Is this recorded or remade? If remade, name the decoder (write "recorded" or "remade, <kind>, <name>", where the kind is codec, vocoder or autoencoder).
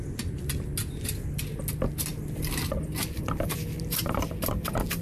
recorded